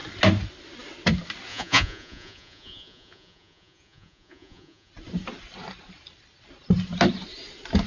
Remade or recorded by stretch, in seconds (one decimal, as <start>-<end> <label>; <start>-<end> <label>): 0.0-1.5 recorded; 1.5-4.9 remade; 4.9-7.9 recorded